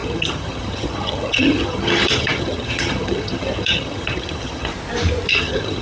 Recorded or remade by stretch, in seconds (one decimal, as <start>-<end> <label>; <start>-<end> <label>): 0.0-4.7 remade; 4.7-5.3 recorded; 5.3-5.8 remade